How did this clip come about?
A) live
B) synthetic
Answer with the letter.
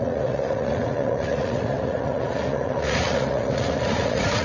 B